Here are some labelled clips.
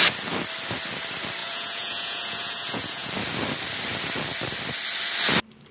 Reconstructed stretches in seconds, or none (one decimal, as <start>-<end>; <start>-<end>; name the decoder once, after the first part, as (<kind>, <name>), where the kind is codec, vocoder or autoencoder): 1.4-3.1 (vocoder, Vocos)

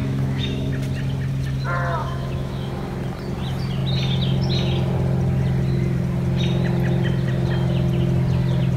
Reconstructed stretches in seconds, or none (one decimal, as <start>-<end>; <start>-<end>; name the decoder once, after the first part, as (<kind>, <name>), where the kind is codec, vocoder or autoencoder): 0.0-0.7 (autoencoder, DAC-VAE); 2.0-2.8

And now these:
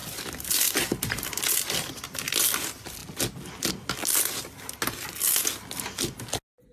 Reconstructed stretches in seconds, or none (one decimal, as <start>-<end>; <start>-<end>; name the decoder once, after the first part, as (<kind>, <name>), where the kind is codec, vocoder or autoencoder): 0.0-1.4 (vocoder, BigVGAN v2)

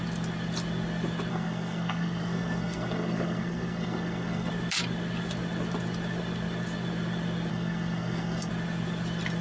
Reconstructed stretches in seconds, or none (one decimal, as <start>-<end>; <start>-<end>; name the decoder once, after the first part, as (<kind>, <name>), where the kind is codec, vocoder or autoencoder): 1.3-4.5 (codec, SNAC); 7.5-8.5

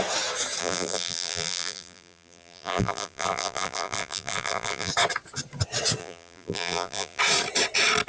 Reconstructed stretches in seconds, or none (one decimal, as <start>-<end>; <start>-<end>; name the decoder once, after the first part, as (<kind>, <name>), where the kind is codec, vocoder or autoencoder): 0.6-4.9 (vocoder, BigVGAN v2); 6.0-7.2

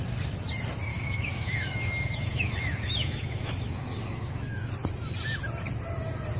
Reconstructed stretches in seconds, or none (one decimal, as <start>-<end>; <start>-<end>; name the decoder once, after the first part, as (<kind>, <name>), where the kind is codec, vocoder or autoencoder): 0.9-4.7 (autoencoder, DAC-VAE)

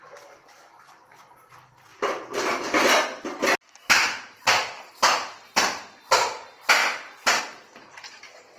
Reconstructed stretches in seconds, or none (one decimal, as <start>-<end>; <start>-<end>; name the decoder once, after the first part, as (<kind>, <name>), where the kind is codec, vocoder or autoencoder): none